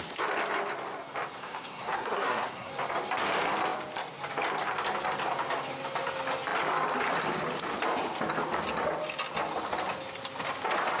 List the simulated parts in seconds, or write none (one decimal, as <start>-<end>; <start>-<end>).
1.4-2.7